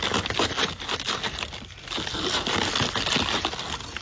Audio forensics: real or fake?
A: real